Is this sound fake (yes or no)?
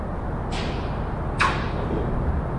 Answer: no